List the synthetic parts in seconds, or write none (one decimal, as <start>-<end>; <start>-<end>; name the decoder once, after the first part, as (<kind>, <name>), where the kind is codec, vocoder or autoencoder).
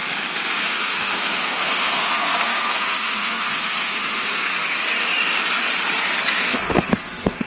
0.6-4.5 (codec, SNAC); 6.4-7.5